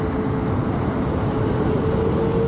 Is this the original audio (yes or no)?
yes